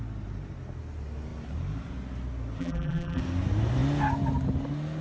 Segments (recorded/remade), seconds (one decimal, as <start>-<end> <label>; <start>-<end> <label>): 0.0-2.6 recorded; 2.6-3.2 remade; 3.2-5.0 recorded